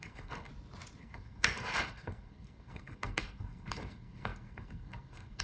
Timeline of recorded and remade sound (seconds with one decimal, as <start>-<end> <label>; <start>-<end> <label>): 0.0-0.5 remade; 0.5-1.0 recorded; 1.0-5.4 remade